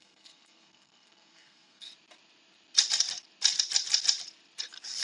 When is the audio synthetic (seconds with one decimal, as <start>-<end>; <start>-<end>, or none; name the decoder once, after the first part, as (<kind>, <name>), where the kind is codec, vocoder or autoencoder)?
0.0-1.9 (codec, SNAC)